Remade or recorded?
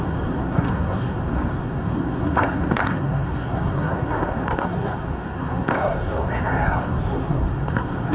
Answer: remade